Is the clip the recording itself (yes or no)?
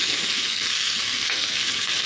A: no